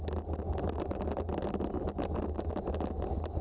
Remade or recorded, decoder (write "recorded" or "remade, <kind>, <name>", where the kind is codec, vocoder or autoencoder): recorded